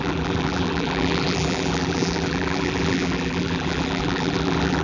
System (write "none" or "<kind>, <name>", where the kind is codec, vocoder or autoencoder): vocoder, BigVGAN v2